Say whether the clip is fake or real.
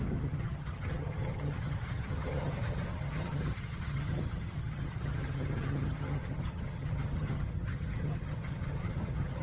fake